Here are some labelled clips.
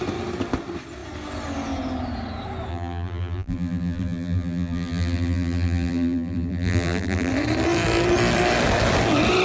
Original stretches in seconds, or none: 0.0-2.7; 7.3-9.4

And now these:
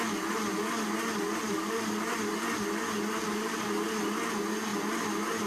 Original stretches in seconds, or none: 0.0-5.5

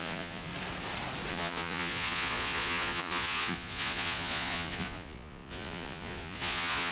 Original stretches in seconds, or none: 0.5-1.3

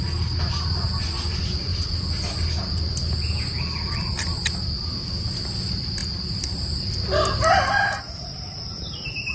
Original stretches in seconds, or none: 0.0-9.3

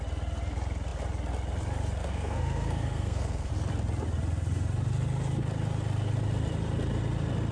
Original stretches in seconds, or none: 0.0-2.0; 3.5-7.5

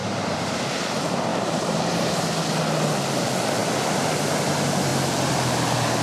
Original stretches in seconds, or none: 0.7-1.3; 2.3-6.0